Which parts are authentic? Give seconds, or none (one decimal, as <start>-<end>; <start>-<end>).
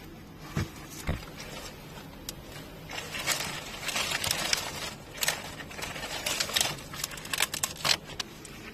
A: 0.0-8.7